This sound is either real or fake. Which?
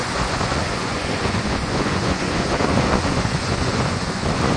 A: fake